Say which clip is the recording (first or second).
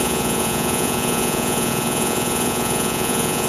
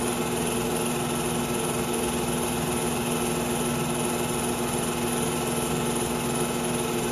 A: second